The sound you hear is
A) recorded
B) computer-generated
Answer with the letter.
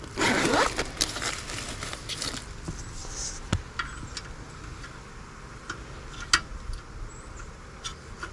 A